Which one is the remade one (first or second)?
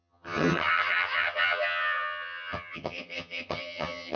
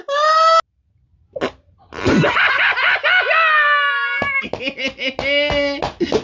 first